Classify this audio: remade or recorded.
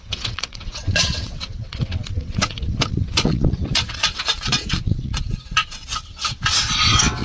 remade